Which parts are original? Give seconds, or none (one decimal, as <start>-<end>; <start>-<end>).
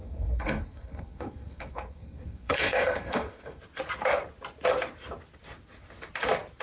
3.6-6.6